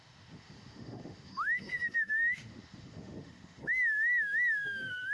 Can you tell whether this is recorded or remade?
remade